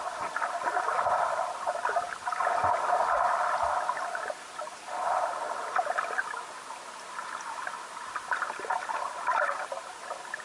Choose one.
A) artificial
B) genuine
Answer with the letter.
B